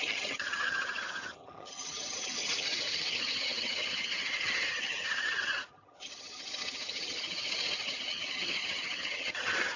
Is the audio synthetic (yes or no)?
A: yes